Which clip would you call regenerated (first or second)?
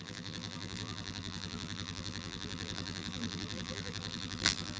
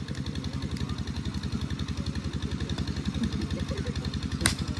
first